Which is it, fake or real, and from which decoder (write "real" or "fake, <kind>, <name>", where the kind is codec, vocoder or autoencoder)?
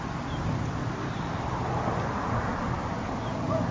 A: real